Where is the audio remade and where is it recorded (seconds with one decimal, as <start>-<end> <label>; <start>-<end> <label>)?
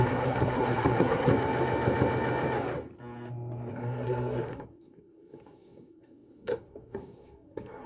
0.0-1.3 remade; 1.3-3.7 recorded; 3.7-7.9 remade